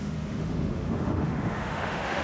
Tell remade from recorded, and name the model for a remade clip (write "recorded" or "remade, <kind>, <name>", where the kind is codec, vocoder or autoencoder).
remade, autoencoder, DAC-VAE